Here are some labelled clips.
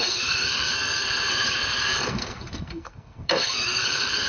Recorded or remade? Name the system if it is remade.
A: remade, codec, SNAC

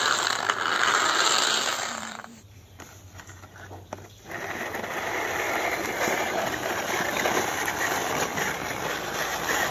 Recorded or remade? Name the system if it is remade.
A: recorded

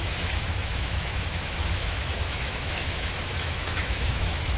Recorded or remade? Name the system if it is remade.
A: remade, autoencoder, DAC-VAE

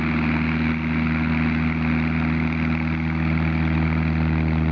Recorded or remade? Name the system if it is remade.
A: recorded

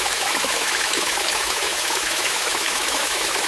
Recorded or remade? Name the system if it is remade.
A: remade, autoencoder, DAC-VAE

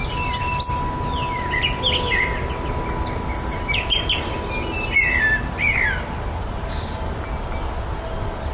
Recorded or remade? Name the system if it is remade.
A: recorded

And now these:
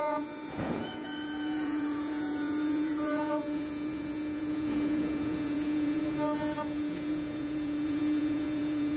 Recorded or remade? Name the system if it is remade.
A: remade, vocoder, Vocos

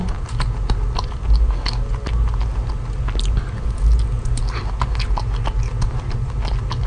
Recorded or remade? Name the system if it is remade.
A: recorded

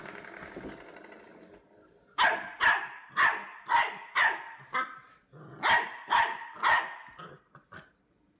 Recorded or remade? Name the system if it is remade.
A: recorded